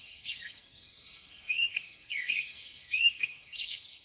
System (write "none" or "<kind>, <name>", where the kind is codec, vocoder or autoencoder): codec, SNAC